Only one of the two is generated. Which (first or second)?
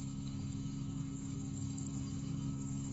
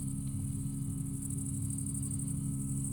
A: first